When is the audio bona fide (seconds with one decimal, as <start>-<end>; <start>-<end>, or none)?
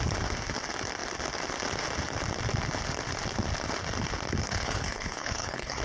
0.0-4.4